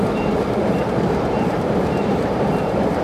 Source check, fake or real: fake